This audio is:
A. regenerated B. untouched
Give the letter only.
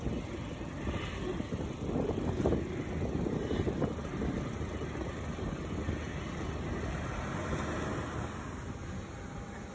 B